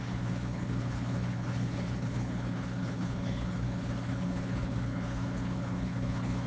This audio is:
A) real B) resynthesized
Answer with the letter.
B